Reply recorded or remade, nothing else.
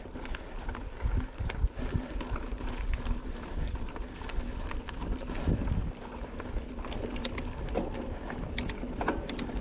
recorded